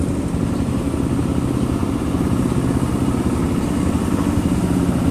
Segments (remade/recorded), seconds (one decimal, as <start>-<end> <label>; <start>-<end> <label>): 0.0-5.1 recorded

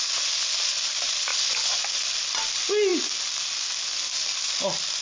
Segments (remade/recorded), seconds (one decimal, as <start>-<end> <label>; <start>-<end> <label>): 0.0-1.3 recorded; 1.3-1.8 remade; 1.8-5.0 recorded

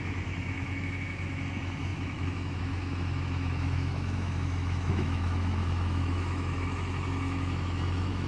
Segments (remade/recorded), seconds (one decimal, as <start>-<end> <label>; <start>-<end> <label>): 0.0-8.3 remade